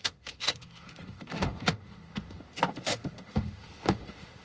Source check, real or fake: fake